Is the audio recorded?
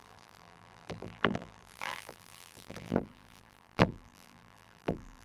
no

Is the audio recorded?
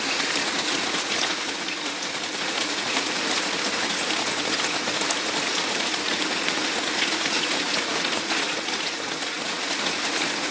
no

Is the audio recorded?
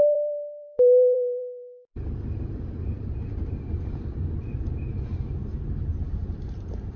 no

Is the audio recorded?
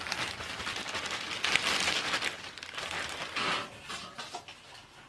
yes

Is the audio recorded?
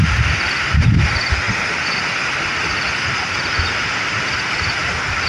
yes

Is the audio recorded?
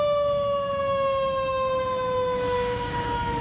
no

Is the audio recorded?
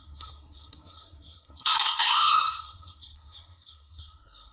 no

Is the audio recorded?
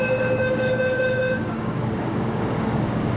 no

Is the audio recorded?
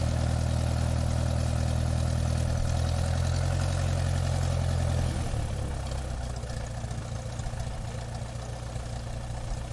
yes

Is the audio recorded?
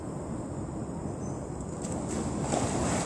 yes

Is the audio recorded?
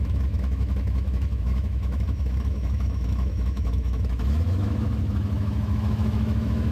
no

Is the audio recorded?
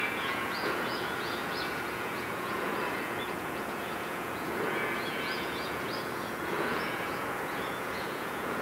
no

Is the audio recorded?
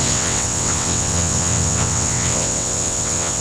no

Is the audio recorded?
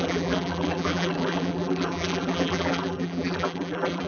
no